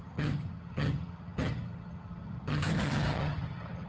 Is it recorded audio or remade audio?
remade